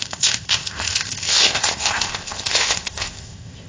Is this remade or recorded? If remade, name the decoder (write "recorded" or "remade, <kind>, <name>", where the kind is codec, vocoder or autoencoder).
remade, codec, ZipCodec